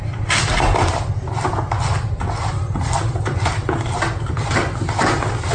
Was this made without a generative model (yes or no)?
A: yes